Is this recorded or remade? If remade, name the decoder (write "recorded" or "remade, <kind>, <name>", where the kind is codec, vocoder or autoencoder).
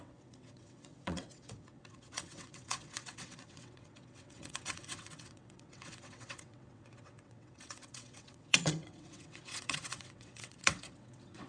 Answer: remade, vocoder, WaveNeXt